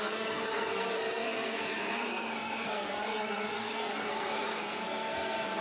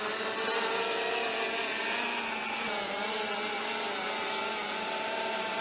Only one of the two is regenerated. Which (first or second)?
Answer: first